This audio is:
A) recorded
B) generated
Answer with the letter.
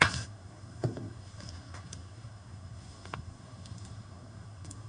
B